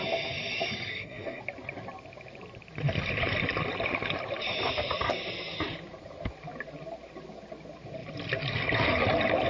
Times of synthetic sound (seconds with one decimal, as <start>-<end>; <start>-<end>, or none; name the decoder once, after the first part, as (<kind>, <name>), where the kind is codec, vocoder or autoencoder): 0.9-1.4 (codec, SNAC)

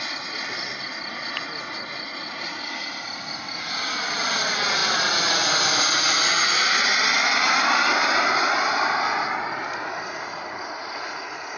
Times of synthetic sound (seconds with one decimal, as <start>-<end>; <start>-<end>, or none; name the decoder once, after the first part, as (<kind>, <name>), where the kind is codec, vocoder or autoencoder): none